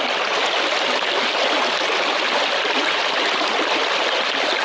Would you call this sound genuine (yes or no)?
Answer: yes